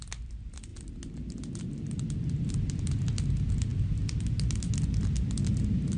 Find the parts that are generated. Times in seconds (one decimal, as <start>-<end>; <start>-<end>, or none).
none